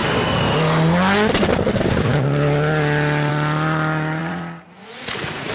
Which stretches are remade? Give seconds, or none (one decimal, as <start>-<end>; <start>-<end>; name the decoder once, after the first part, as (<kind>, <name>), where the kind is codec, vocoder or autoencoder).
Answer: 4.2-5.5 (vocoder, Vocos)